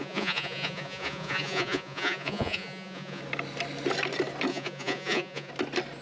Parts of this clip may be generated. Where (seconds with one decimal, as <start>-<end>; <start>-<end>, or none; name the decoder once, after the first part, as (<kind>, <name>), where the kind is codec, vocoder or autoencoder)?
0.0-3.2 (vocoder, Vocos); 4.5-5.5